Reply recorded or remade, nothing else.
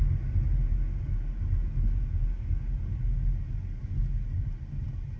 recorded